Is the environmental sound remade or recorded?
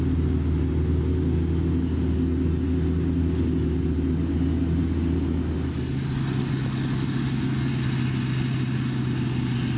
recorded